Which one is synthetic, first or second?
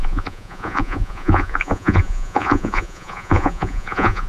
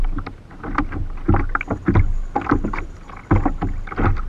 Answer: first